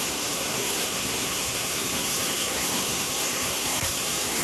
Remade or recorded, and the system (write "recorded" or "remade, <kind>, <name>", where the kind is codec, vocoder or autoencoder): remade, codec, SNAC